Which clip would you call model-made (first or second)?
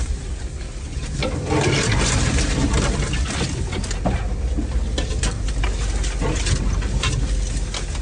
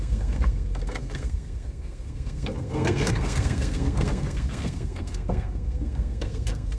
second